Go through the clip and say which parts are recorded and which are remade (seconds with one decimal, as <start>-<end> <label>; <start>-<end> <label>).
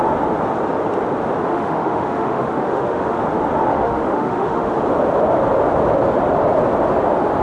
0.0-1.5 recorded; 1.5-3.2 remade; 3.2-3.7 recorded; 3.7-4.7 remade; 4.7-7.4 recorded